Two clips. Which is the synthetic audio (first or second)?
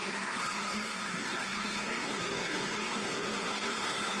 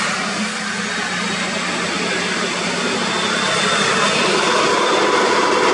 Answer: first